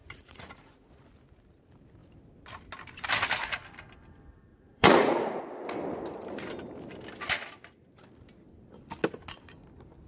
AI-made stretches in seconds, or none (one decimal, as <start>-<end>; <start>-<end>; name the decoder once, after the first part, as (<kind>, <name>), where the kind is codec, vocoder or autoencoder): 0.0-0.9 (vocoder, Vocos); 4.5-5.4